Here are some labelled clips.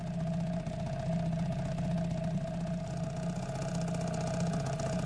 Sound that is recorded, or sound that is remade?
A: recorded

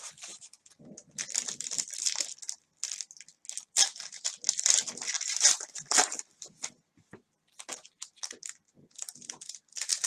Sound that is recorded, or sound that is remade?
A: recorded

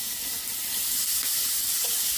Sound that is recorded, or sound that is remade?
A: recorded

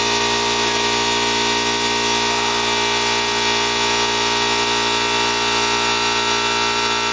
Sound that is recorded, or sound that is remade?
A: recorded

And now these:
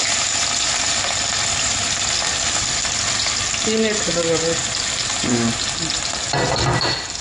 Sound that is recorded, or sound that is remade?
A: recorded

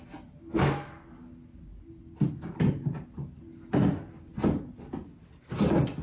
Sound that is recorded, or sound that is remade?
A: recorded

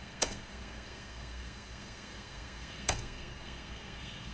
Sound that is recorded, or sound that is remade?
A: remade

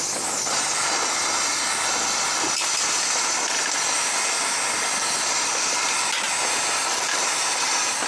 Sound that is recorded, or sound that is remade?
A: recorded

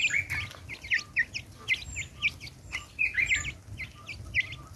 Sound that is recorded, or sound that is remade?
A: recorded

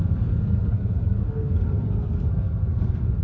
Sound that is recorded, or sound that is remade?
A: remade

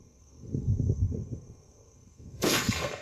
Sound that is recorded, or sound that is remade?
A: remade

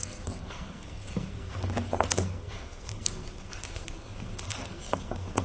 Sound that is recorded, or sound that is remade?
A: remade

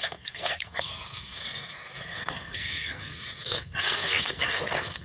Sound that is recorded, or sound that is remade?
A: remade